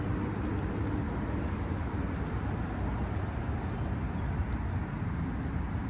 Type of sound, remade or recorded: recorded